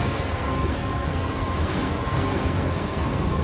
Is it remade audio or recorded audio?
remade